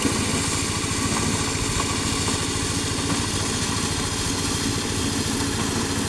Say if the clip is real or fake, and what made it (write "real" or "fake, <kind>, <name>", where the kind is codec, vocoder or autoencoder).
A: real